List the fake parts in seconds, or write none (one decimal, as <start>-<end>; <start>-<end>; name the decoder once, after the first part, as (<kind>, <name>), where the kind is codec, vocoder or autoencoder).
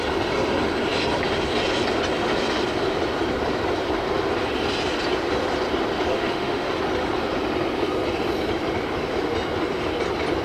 6.1-6.7 (autoencoder, DAC-VAE)